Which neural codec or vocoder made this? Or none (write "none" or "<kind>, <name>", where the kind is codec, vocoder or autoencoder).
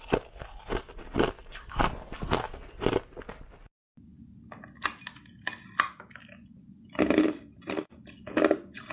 none